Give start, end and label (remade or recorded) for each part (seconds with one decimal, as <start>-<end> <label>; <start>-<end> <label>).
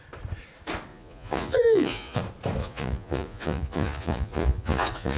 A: 0.0-0.9 recorded; 0.9-2.2 remade; 2.2-2.6 recorded; 2.6-5.2 remade